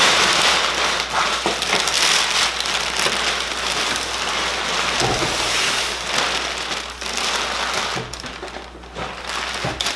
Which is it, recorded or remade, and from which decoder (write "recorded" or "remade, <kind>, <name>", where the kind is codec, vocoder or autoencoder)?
recorded